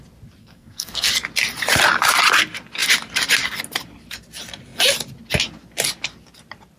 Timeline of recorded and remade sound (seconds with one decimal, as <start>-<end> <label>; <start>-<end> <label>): 0.0-0.4 recorded; 0.4-1.1 remade; 1.1-6.8 recorded

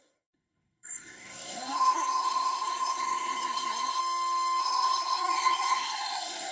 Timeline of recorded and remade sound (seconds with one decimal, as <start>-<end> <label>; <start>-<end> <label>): 0.0-4.0 remade; 4.0-4.6 recorded; 4.6-6.5 remade

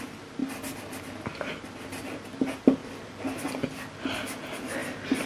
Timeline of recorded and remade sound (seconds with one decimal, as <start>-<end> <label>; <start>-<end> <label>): 0.0-5.3 recorded

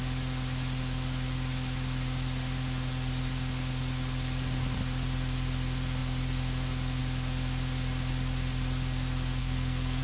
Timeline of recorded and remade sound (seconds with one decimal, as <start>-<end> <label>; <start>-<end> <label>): 0.0-9.4 recorded; 9.4-10.0 remade

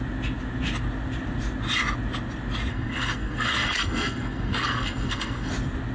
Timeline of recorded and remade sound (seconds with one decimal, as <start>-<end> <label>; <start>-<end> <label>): 0.0-2.7 recorded; 2.7-5.5 remade; 5.5-5.9 recorded

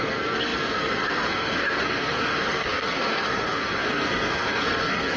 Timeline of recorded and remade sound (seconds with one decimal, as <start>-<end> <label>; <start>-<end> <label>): 0.0-5.2 remade

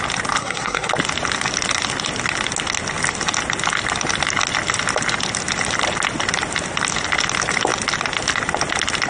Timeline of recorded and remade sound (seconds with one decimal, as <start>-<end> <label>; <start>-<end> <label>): 0.0-0.4 recorded; 0.4-0.9 remade; 0.9-9.1 recorded